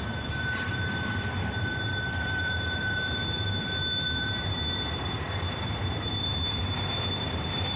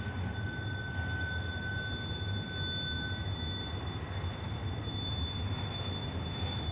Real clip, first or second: second